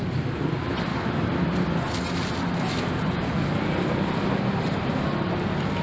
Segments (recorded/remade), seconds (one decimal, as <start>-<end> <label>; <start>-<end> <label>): 0.0-5.8 recorded